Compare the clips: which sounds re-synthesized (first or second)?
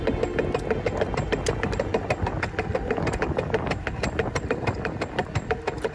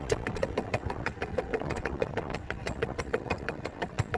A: second